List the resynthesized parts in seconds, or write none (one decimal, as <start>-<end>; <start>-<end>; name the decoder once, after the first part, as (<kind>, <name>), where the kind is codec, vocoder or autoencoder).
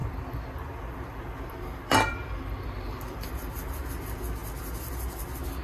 0.0-3.3 (vocoder, BigVGAN v2)